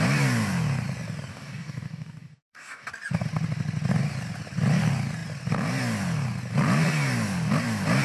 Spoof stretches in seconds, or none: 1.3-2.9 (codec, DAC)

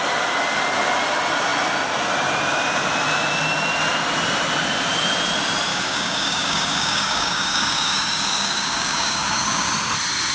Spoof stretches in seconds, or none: 5.7-9.7 (codec, DAC)

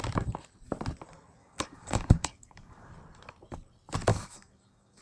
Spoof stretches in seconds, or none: 1.4-2.9 (codec, DAC); 4.1-5.0